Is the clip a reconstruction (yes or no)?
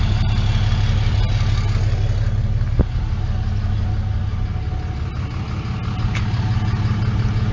no